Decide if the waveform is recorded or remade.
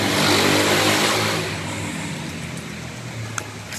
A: recorded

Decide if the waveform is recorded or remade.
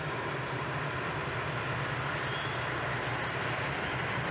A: remade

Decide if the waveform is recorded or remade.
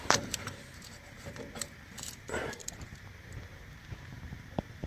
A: remade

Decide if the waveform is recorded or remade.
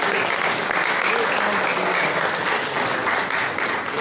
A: recorded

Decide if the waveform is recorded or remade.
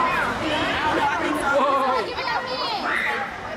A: remade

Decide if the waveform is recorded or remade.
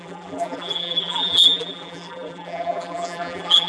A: remade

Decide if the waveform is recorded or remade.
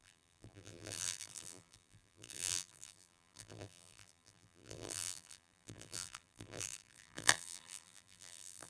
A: remade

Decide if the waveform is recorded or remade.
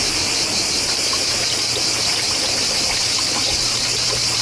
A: recorded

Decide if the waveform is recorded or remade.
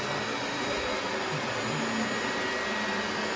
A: recorded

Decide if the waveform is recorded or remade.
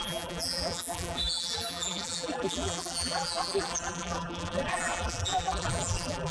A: remade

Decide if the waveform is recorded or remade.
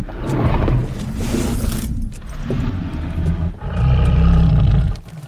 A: recorded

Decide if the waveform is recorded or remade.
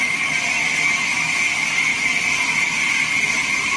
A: recorded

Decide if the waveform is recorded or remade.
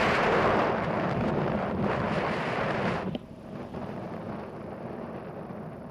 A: remade